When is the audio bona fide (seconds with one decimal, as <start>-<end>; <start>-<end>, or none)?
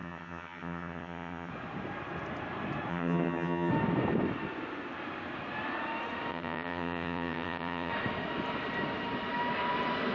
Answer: 1.5-2.9; 3.7-6.3; 7.9-10.1